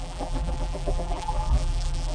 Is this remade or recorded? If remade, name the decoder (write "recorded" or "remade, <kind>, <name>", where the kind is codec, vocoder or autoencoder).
remade, vocoder, BigVGAN v2